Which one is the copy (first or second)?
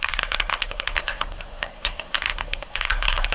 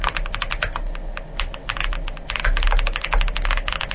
first